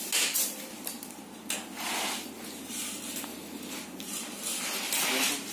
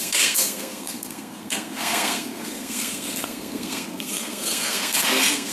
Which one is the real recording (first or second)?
first